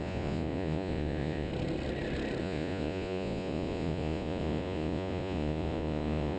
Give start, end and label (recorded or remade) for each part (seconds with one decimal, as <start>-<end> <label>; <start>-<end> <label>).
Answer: 0.0-1.5 remade; 1.5-2.4 recorded; 2.4-6.4 remade